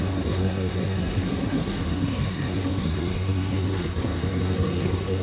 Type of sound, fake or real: fake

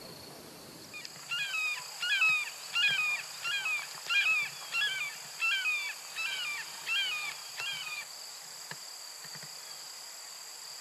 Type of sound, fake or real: real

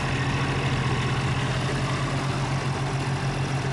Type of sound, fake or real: real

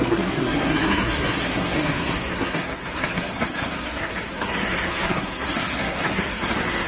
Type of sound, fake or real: fake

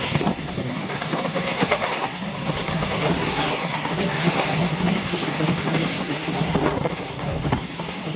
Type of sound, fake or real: fake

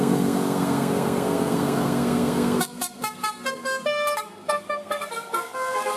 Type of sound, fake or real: fake